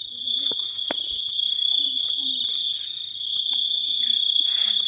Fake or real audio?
real